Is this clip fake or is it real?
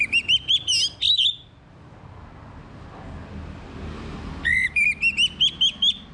real